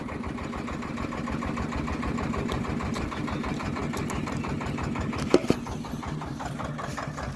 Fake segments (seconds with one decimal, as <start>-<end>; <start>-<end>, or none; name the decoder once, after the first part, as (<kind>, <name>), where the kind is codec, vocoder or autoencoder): none

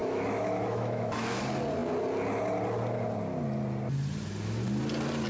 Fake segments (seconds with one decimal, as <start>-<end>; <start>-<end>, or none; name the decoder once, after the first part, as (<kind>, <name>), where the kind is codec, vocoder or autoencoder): 0.0-1.4 (autoencoder, DAC-VAE)

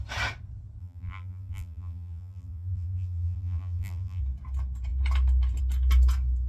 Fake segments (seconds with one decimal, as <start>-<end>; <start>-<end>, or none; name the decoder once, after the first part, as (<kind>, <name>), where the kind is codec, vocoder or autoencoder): 0.8-4.2 (vocoder, BigVGAN v2)

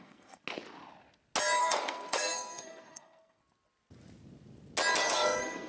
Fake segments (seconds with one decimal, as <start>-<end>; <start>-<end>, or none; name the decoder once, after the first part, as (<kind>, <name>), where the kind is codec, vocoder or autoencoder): 0.0-0.4 (codec, SNAC); 1.6-3.4; 5.0-5.7

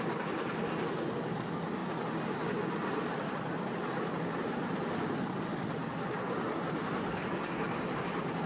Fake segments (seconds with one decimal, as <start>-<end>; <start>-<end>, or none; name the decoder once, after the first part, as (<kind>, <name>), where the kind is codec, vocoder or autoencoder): none

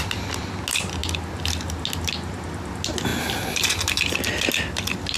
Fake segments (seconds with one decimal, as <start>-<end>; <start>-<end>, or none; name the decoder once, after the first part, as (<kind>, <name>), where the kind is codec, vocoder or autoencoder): none

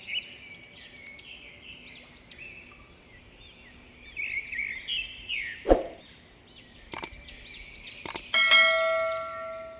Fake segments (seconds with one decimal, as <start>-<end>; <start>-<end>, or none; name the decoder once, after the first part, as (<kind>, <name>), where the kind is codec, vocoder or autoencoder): 4.6-6.9 (vocoder, BigVGAN v2)

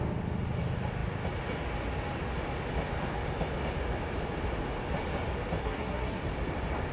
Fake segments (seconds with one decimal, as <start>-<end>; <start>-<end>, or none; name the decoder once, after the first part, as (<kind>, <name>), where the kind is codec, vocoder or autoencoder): 5.6-6.2 (codec, SNAC)